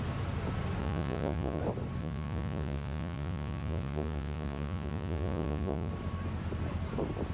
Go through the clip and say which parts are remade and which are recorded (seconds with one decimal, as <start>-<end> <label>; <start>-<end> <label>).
0.0-0.8 recorded; 0.8-1.6 remade; 1.6-2.0 recorded; 2.0-5.9 remade; 5.9-7.3 recorded